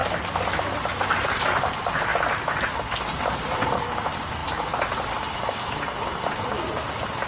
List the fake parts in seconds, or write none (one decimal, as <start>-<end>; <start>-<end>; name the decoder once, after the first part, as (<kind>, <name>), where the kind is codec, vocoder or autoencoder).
1.1-2.1 (vocoder, BigVGAN v2); 3.2-4.4; 6.3-7.3